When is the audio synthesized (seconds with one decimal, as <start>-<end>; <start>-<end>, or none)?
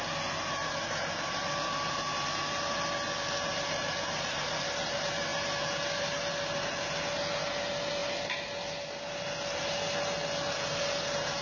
none